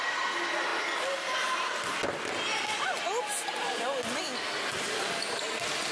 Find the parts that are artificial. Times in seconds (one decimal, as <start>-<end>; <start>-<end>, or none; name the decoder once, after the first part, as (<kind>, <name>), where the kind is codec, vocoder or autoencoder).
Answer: none